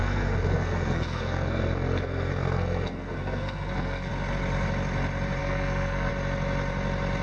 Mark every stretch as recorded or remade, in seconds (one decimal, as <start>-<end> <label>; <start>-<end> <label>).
0.0-4.1 remade; 4.1-5.4 recorded; 5.4-6.1 remade; 6.1-7.2 recorded